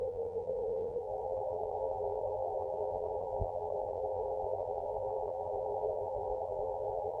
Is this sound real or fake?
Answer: fake